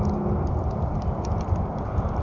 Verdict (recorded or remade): recorded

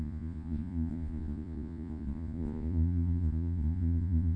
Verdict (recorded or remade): remade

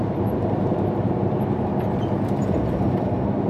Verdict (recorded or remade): remade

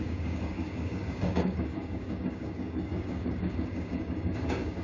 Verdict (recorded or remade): remade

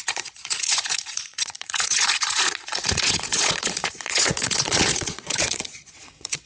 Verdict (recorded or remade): remade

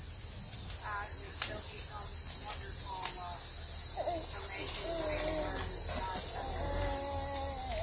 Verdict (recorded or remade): recorded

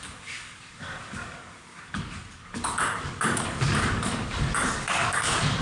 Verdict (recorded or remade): remade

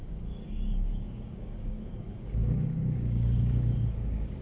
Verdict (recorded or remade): remade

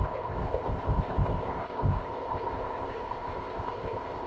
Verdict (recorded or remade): remade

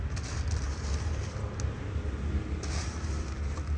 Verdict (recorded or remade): recorded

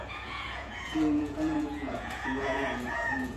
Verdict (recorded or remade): remade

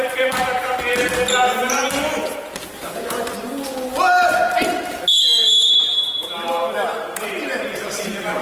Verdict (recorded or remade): recorded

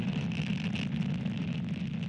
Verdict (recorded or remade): recorded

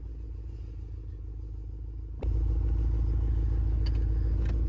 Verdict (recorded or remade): recorded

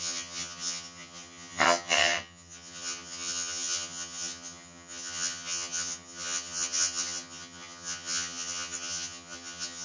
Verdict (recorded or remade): remade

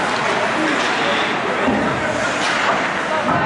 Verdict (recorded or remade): recorded